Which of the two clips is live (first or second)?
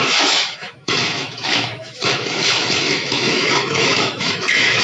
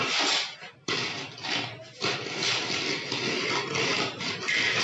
second